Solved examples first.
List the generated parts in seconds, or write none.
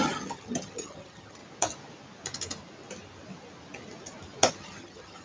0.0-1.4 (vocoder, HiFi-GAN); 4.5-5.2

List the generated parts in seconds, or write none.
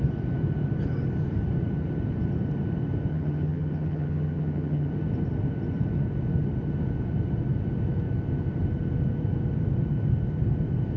3.1-4.9 (vocoder, HiFi-GAN)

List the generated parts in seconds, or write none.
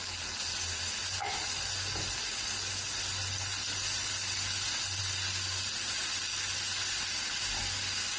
none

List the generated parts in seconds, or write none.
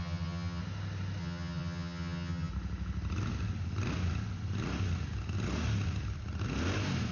0.0-0.6 (vocoder, HiFi-GAN); 1.2-2.5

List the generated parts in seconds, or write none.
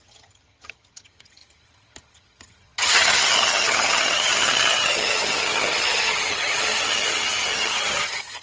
0.0-8.4 (vocoder, HiFi-GAN)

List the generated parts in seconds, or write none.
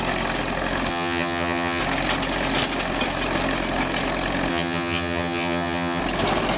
0.9-1.8 (vocoder, HiFi-GAN); 4.5-6.0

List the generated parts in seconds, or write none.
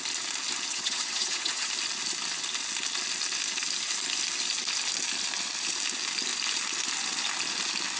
0.7-1.7 (vocoder, HiFi-GAN)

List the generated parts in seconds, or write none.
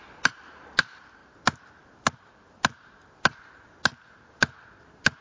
none